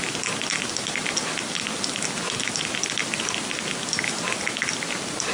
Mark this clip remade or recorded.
recorded